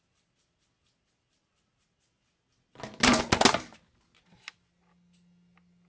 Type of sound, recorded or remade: recorded